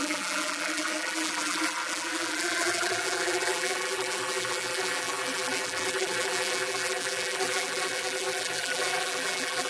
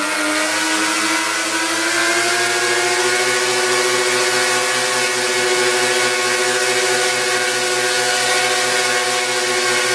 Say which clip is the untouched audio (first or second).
second